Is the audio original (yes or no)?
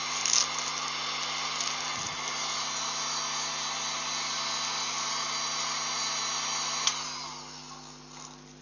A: yes